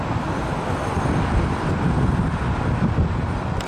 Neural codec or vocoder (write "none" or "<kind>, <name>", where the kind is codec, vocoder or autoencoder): none